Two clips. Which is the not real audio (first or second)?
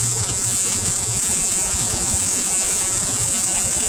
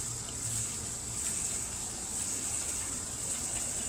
first